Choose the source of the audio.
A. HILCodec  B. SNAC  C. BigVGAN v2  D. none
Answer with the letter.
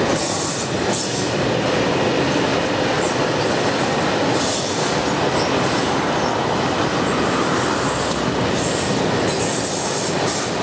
D